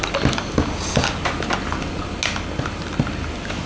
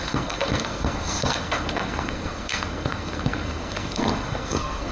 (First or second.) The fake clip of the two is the second